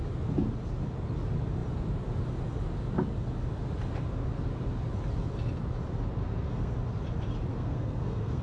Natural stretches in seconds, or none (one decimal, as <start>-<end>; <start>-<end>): 0.0-6.2; 6.7-7.5